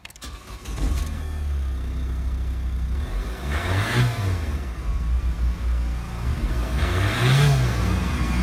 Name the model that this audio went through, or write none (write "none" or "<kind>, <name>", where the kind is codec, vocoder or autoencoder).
codec, SNAC